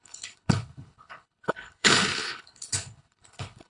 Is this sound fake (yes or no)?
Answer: yes